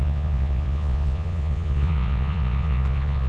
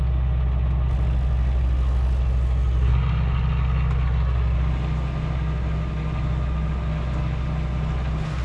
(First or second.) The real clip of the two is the second